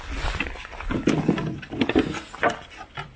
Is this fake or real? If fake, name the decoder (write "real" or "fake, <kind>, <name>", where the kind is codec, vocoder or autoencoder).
real